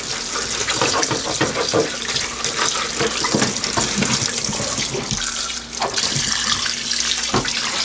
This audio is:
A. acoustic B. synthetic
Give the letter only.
A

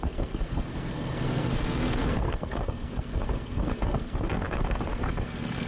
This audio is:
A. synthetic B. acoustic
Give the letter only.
A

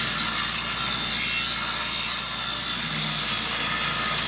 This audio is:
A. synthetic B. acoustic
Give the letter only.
B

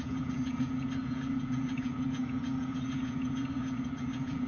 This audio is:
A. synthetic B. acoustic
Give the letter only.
A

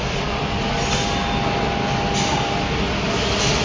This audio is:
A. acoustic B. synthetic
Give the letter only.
A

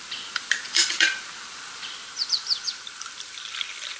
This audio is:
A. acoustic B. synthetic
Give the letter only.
B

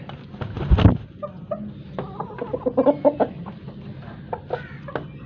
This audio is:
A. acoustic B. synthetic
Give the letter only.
A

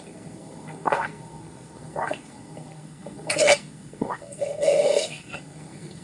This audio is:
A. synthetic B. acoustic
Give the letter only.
A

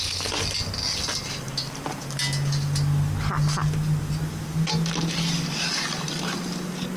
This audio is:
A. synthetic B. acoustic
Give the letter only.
B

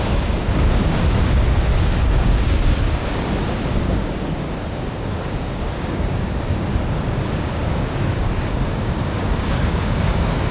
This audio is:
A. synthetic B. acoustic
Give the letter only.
A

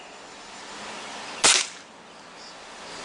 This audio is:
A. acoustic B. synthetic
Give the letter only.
A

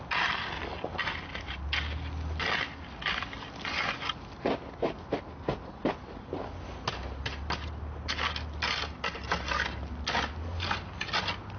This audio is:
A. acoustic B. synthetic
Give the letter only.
A